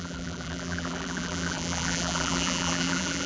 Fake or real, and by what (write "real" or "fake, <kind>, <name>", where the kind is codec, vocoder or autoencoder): fake, vocoder, BigVGAN v2